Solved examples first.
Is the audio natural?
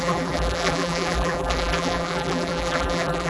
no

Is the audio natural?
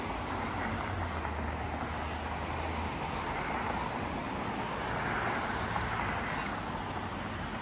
yes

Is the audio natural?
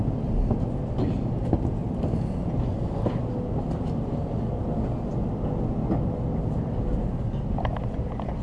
yes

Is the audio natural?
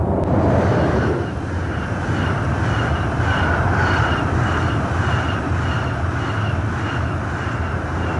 yes